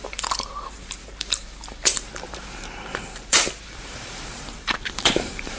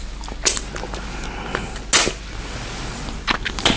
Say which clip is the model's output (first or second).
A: first